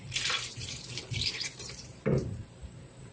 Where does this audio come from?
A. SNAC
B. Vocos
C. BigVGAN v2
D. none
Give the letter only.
C